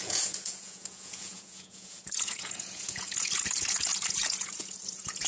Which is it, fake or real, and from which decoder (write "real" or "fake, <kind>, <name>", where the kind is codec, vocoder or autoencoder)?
fake, vocoder, Vocos